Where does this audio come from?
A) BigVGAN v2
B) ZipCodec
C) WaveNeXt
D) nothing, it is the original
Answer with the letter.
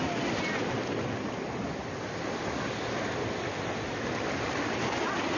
D